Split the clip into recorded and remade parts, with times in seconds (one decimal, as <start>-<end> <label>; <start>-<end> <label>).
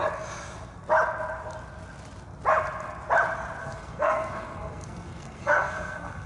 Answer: 0.0-3.6 recorded; 3.6-6.3 remade